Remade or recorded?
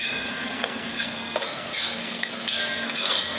remade